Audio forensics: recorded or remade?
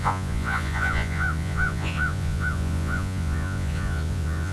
remade